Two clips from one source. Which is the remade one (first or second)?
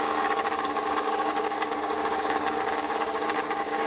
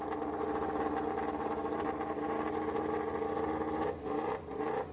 first